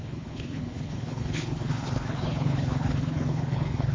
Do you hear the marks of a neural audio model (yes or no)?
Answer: yes